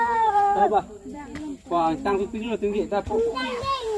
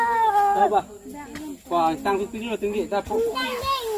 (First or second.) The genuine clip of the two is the second